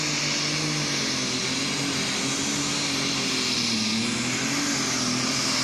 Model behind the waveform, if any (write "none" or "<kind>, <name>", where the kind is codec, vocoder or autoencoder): none